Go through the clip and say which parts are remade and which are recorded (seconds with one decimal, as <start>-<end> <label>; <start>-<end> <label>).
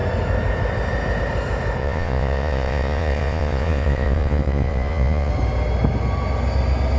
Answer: 0.0-1.8 recorded; 1.8-5.3 remade; 5.3-7.0 recorded